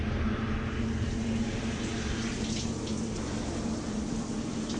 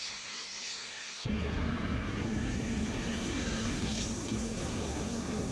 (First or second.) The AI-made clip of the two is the second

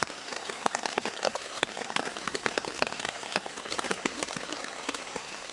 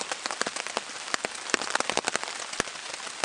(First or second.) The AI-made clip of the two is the first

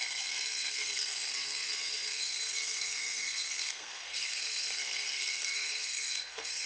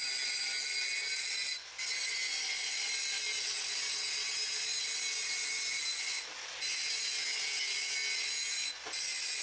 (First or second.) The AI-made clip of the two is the first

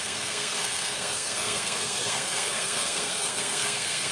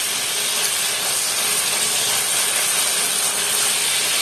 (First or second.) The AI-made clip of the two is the first